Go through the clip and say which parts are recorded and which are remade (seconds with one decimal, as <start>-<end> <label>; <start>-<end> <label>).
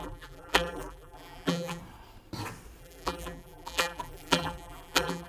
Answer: 0.0-1.8 remade; 1.8-2.8 recorded; 2.8-5.3 remade